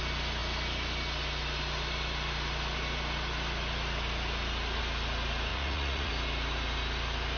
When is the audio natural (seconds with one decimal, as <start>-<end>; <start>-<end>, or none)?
0.0-5.5; 6.1-7.4